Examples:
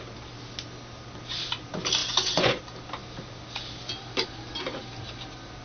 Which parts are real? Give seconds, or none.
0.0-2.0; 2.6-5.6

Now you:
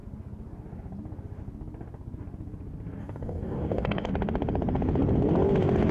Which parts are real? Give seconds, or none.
0.0-3.0; 4.1-5.9

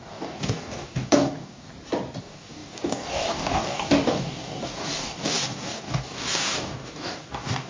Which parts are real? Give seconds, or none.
1.7-2.2

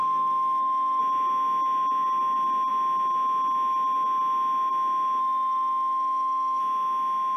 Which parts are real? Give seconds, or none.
1.0-5.2; 6.6-7.4

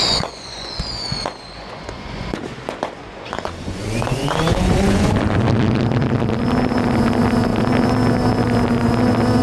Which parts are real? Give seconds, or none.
5.1-9.4

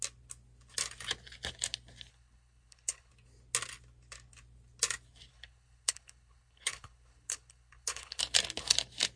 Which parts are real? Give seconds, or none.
0.0-2.1; 3.1-5.3; 8.2-9.2

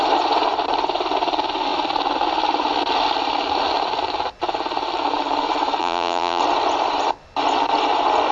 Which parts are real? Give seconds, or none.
0.0-5.8; 6.4-8.3

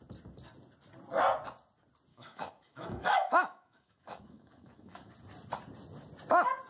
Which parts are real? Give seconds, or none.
0.0-2.1; 5.1-6.7